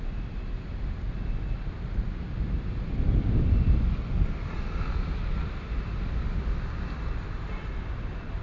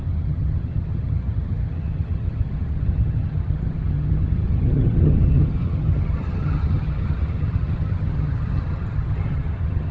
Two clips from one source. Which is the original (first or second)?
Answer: first